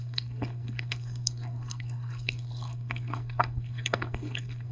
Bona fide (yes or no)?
no